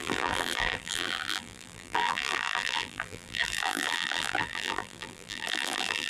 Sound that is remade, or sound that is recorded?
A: remade